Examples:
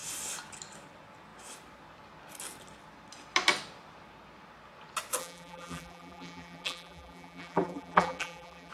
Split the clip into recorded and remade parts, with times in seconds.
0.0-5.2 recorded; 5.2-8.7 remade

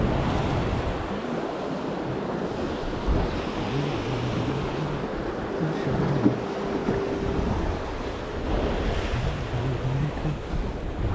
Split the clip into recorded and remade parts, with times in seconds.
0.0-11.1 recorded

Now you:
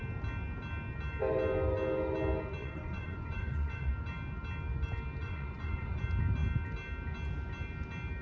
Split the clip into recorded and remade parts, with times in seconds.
0.0-2.6 recorded; 2.6-3.9 remade; 3.9-5.2 recorded; 5.2-6.0 remade; 6.0-8.2 recorded